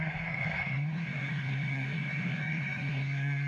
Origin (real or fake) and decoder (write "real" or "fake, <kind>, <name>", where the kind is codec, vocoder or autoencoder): fake, codec, SNAC